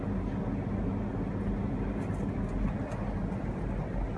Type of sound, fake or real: real